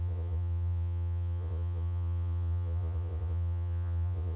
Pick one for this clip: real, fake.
fake